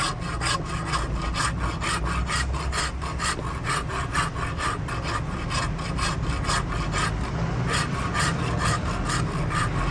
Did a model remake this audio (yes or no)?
no